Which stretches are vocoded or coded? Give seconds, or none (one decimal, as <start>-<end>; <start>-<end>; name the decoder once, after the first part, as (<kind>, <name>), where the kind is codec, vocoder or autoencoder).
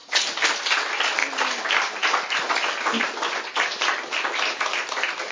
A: none